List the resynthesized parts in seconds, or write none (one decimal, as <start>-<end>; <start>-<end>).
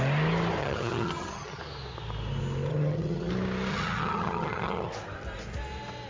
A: 0.6-1.6; 2.7-3.3; 3.7-4.9